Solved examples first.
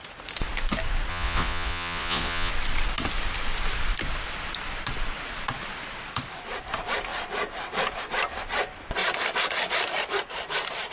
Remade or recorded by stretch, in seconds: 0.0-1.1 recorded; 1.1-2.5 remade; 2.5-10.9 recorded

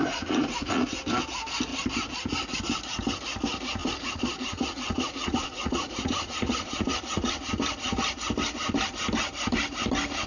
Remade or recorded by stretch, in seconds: 0.0-1.0 remade; 1.0-3.8 recorded; 3.8-7.5 remade; 7.5-10.3 recorded

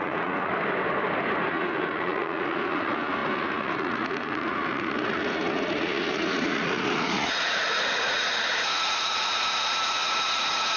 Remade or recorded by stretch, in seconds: 0.0-0.5 remade; 0.5-1.5 recorded; 1.5-10.8 remade

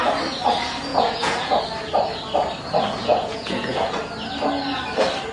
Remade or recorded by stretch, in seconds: 0.0-0.9 recorded; 0.9-1.6 remade; 1.6-3.0 recorded; 3.0-3.9 remade; 3.9-5.3 recorded

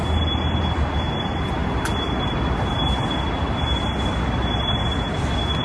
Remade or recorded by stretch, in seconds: 0.0-5.6 recorded